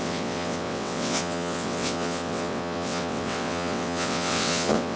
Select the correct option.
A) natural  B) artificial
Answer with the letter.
B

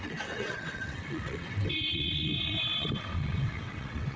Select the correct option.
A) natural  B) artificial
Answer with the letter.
B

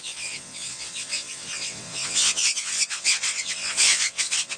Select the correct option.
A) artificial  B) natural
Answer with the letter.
A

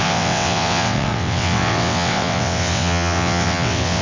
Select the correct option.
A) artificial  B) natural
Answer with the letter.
A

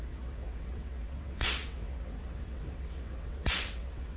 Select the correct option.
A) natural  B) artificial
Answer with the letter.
B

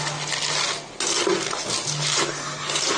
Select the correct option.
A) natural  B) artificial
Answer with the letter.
A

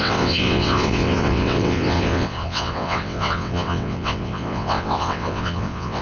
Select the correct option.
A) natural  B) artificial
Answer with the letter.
B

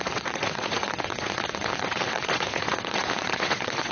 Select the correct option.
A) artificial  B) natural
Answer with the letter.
A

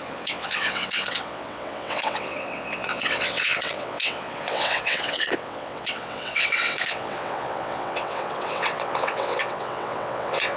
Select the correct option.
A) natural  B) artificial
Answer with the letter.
B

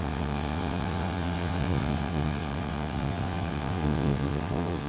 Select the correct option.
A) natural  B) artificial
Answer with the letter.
B